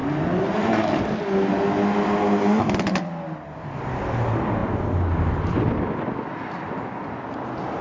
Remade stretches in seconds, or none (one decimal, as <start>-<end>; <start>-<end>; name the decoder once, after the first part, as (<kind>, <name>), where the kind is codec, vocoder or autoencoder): none